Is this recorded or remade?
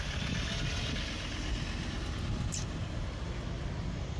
recorded